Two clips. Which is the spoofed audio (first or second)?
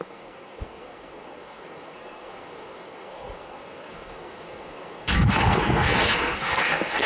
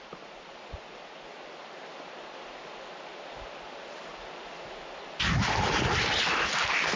first